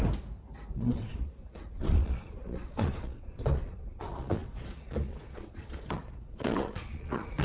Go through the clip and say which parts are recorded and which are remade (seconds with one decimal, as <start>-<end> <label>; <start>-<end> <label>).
0.0-0.7 recorded; 0.7-7.4 remade